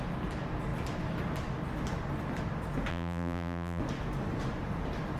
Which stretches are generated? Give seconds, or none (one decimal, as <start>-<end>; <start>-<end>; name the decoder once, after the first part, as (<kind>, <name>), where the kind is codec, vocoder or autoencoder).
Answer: 2.9-3.8 (vocoder, BigVGAN v2)